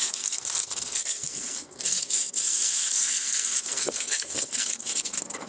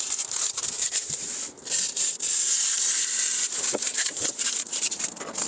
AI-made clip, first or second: first